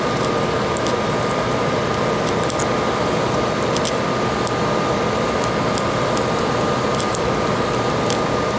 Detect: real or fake real